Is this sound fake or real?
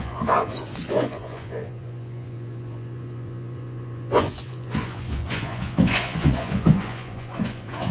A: fake